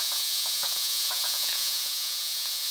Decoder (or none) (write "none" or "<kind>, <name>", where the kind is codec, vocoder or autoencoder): vocoder, Vocos